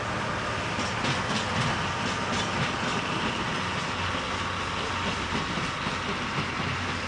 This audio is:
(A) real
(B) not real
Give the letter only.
A